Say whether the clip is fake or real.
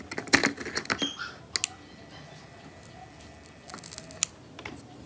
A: real